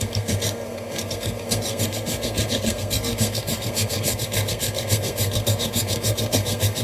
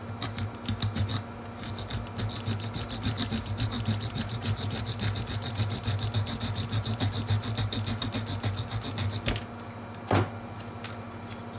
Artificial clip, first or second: first